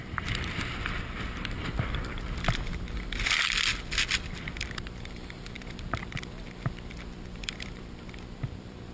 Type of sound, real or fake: fake